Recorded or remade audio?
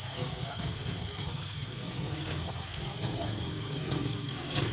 remade